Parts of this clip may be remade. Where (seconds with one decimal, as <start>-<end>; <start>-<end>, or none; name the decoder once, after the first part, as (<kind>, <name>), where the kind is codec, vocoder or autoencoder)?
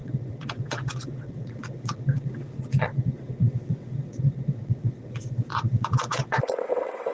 0.0-7.1 (vocoder, WaveNeXt)